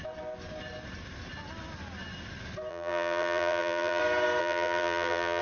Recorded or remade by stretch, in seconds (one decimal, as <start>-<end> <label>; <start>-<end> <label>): 0.0-2.7 recorded; 2.7-4.0 remade; 4.0-4.4 recorded; 4.4-5.4 remade